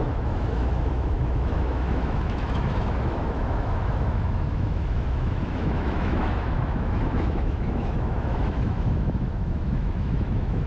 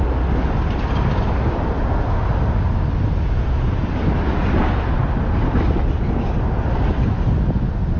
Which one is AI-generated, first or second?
first